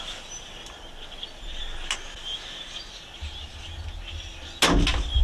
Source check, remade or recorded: recorded